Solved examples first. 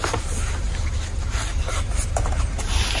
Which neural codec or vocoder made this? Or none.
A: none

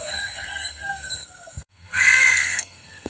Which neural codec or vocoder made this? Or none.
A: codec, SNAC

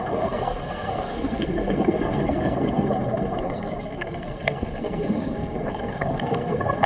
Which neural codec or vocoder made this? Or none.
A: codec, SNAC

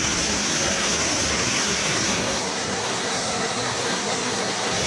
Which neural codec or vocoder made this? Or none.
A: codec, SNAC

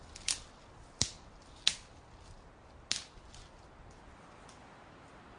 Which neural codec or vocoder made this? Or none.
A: none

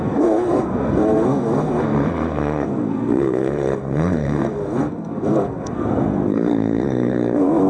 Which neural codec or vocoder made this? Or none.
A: codec, SNAC